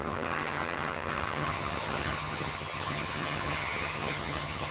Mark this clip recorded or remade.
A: remade